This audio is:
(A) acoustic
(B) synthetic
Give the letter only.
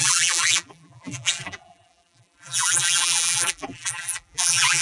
B